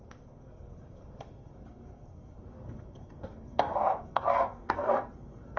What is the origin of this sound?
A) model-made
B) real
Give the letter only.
A